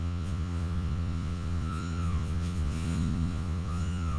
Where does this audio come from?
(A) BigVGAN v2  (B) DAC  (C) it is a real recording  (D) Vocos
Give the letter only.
D